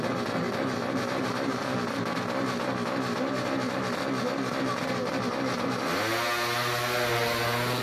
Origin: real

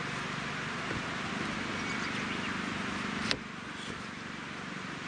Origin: real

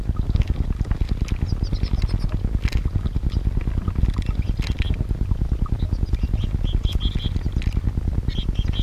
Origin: real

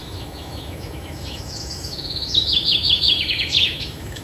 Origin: fake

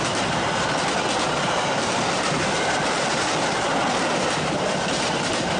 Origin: real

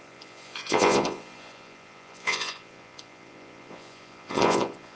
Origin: fake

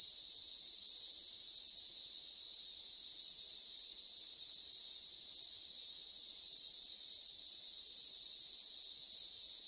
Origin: real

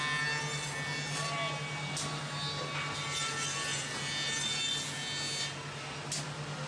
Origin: real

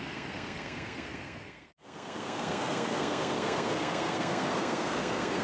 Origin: fake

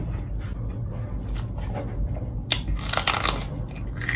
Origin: real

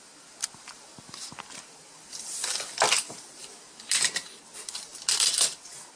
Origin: real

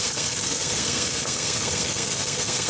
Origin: fake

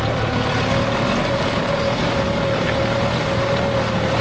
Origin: real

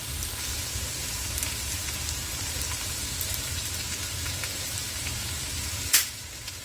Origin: fake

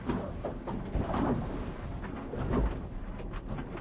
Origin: real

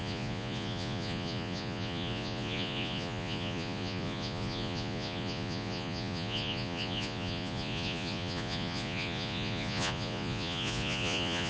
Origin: fake